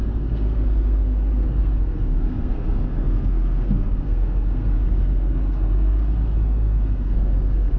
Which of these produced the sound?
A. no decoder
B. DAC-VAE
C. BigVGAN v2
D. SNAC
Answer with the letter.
D